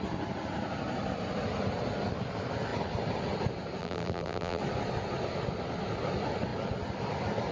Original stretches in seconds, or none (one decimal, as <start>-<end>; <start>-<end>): 0.0-3.8; 4.6-7.5

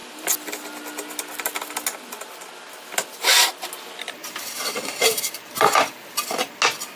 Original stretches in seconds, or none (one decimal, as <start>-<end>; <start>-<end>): 0.0-4.2; 6.4-7.0

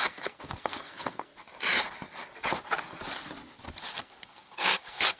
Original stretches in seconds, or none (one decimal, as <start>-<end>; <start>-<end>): 1.3-4.0

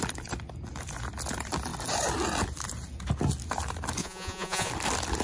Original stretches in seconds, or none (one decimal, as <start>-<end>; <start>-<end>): 0.0-4.0; 4.7-5.2

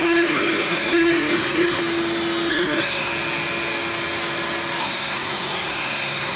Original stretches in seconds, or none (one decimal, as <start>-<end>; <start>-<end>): 1.8-2.5; 3.1-4.8